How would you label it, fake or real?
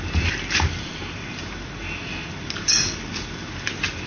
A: real